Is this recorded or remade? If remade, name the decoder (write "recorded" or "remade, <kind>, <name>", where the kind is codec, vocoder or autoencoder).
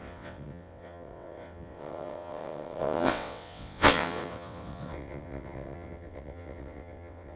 remade, vocoder, WaveNeXt